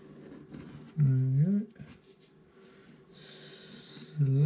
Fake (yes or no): no